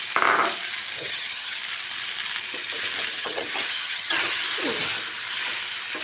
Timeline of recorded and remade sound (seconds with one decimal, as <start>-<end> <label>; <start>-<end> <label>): 0.0-1.0 recorded; 1.0-1.6 remade; 1.6-3.2 recorded; 3.2-4.4 remade; 4.4-6.0 recorded